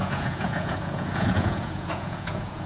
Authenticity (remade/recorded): remade